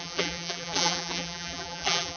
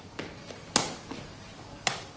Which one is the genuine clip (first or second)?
second